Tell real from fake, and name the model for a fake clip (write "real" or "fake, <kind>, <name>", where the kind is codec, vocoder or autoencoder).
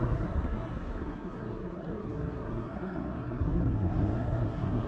fake, codec, SNAC